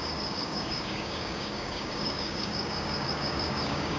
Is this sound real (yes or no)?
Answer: no